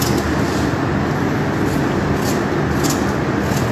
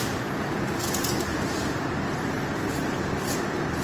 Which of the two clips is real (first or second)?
first